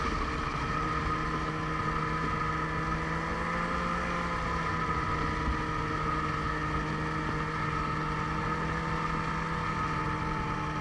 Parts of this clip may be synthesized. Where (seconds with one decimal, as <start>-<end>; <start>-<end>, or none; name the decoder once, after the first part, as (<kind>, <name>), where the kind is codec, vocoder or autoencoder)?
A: none